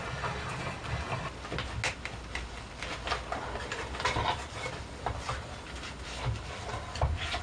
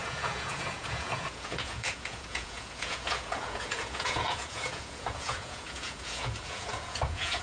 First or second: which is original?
first